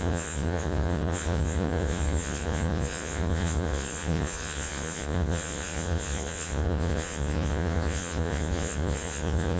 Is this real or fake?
fake